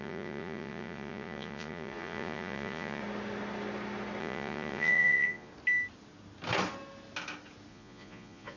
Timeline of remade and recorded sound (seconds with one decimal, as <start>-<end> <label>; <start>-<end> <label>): 0.0-3.0 remade; 3.0-4.2 recorded; 4.2-5.5 remade; 5.5-7.7 recorded; 7.7-8.6 remade